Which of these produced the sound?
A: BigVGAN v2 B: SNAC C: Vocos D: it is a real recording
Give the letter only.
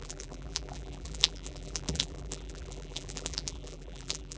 A